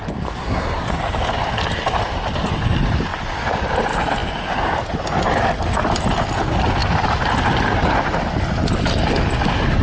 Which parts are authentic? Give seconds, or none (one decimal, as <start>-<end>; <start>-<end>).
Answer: 0.0-0.4; 0.9-9.8